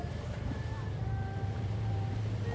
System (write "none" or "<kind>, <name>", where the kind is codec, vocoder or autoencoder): vocoder, BigVGAN v2